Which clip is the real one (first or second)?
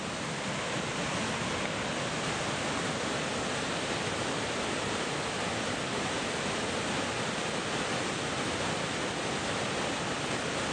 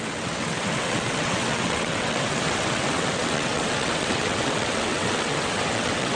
first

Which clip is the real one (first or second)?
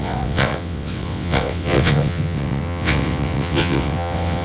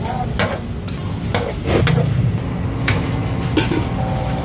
second